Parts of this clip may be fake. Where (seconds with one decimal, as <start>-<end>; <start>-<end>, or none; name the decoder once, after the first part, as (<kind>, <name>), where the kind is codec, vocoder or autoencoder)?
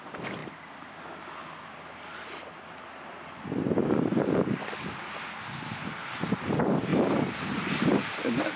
3.8-4.9 (vocoder, BigVGAN v2); 6.9-8.2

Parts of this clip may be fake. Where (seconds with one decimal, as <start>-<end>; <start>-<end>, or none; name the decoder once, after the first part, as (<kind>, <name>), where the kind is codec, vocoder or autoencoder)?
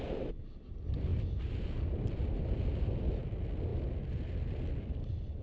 none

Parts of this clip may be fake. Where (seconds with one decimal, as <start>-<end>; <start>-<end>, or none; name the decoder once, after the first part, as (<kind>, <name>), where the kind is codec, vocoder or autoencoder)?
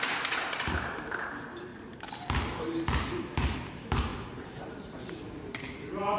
0.0-1.7 (vocoder, BigVGAN v2); 3.2-6.2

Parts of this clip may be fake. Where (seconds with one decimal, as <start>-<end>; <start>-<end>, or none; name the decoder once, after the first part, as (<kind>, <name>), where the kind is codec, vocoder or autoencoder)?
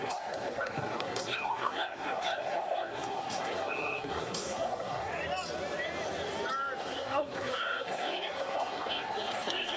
0.0-5.1 (codec, SNAC); 6.8-9.8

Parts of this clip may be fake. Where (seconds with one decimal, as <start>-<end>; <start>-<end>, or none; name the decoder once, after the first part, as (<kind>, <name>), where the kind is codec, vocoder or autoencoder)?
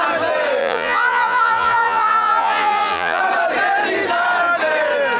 0.6-3.2 (vocoder, Vocos)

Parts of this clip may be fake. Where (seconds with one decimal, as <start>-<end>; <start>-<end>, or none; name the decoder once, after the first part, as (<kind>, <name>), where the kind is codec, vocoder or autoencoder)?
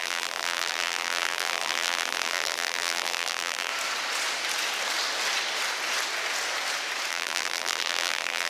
0.0-3.7 (vocoder, BigVGAN v2); 7.1-8.5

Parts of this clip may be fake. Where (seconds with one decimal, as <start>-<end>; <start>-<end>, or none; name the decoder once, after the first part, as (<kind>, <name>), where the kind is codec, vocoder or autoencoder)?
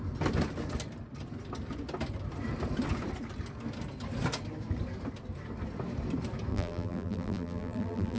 6.5-8.2 (vocoder, BigVGAN v2)